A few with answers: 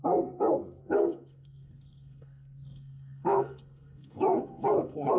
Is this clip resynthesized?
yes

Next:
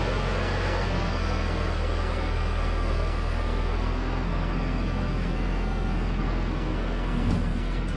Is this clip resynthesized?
yes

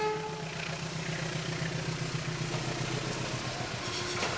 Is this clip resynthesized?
no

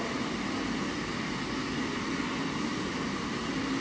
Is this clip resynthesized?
no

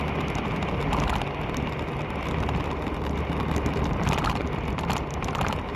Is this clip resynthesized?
yes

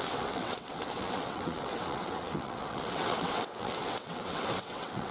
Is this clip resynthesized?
yes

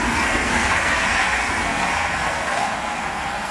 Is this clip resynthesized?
yes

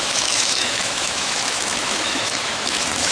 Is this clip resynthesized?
yes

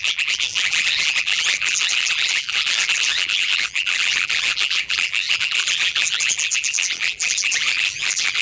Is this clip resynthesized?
yes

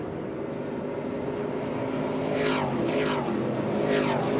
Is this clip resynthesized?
no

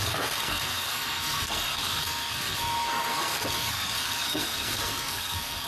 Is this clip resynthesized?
yes